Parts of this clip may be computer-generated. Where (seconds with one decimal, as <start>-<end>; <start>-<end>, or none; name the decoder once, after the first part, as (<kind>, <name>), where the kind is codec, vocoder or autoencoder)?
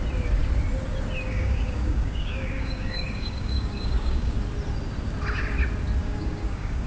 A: 1.3-4.4 (codec, DAC); 6.0-6.9